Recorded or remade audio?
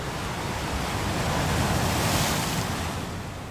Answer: recorded